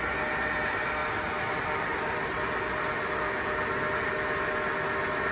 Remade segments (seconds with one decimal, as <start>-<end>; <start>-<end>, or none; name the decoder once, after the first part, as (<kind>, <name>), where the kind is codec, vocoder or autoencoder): none